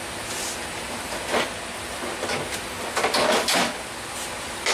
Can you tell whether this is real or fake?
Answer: real